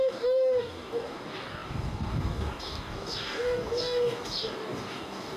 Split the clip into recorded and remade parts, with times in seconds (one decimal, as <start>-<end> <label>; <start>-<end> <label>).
0.0-5.4 remade